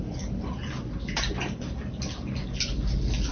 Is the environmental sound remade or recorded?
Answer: recorded